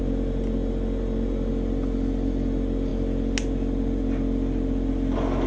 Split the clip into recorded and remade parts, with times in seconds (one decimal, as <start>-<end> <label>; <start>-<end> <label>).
0.0-5.5 recorded